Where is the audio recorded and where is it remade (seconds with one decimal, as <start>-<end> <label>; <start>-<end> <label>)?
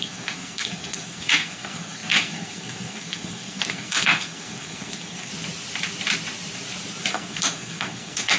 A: 0.0-5.3 remade; 5.3-7.1 recorded; 7.1-8.4 remade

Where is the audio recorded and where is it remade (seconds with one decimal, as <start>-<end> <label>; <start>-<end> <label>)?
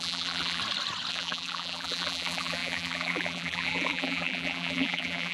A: 0.0-0.6 remade; 0.6-1.1 recorded; 1.1-5.3 remade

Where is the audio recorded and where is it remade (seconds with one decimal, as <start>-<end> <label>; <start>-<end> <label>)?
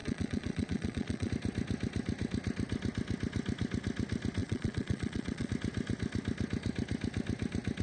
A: 0.0-1.3 remade; 1.3-4.4 recorded; 4.4-5.5 remade; 5.5-7.8 recorded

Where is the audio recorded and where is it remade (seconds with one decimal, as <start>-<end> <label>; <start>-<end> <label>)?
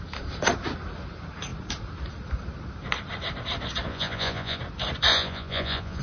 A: 0.0-3.9 recorded; 3.9-4.6 remade; 4.6-5.1 recorded; 5.1-6.0 remade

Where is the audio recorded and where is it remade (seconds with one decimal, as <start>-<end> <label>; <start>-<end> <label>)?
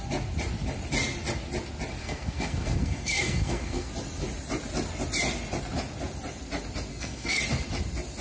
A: 0.0-2.0 recorded; 2.0-3.9 remade; 3.9-6.9 recorded; 6.9-7.4 remade; 7.4-8.2 recorded